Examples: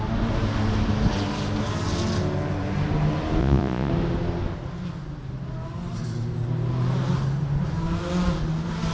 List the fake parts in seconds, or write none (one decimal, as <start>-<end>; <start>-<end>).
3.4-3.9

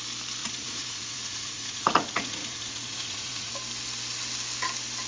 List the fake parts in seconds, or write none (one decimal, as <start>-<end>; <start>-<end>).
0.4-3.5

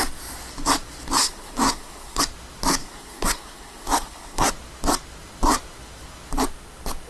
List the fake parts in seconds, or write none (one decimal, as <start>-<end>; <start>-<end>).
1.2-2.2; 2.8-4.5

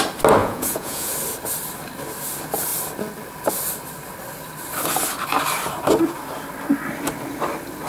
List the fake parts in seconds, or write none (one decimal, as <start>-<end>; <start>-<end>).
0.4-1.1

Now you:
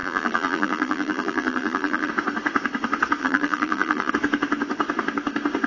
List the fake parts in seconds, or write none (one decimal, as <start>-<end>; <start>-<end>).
0.0-2.1; 3.2-4.1

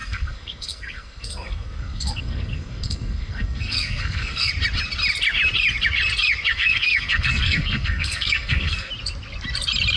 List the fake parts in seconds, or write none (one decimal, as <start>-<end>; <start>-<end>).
0.0-4.5; 6.5-8.9

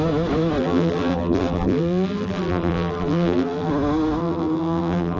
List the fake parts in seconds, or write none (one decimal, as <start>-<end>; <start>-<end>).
0.6-3.7; 4.2-5.2

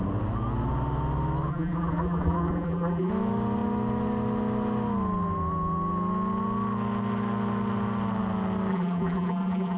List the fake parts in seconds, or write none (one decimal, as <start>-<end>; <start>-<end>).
1.5-3.1; 8.7-9.8